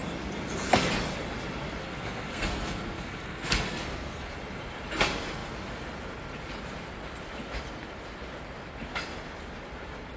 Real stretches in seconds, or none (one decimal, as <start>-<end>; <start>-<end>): 0.0-1.8; 4.3-10.2